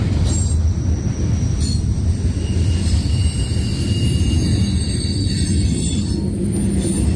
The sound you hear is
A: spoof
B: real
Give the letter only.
B